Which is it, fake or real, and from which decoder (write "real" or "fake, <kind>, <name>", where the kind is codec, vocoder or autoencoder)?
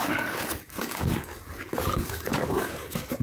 fake, codec, DAC